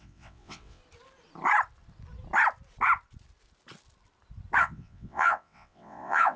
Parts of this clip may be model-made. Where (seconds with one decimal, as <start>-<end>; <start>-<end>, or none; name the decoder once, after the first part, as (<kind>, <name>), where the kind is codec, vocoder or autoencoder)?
0.0-0.8 (vocoder, WaveNeXt); 4.6-6.4